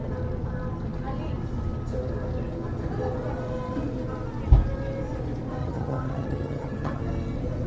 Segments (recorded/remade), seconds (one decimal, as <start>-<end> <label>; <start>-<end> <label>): 0.0-5.6 recorded; 5.6-7.0 remade; 7.0-7.7 recorded